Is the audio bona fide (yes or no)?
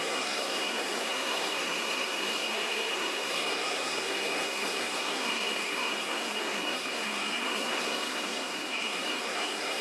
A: no